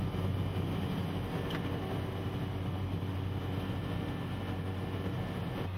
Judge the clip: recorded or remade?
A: recorded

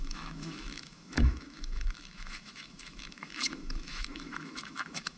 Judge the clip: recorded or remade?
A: remade